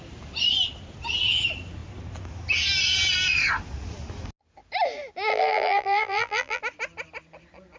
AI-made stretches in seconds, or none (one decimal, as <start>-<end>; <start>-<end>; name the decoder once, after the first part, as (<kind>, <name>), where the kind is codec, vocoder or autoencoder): 5.3-6.6 (vocoder, BigVGAN v2)

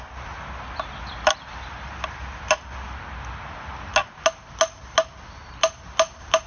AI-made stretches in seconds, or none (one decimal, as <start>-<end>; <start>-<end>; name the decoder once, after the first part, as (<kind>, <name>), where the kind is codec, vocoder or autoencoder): none